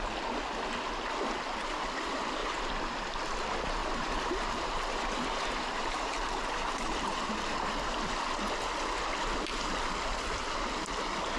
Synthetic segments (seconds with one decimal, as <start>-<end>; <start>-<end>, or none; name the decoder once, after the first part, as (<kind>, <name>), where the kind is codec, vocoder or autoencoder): 2.4-3.1 (vocoder, BigVGAN v2); 3.8-8.1